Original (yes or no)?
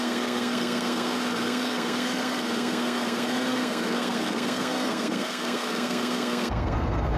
no